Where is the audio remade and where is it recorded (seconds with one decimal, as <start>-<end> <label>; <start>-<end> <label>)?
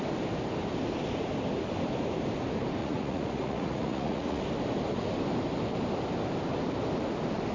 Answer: 0.0-2.8 recorded; 2.8-4.4 remade; 4.4-7.5 recorded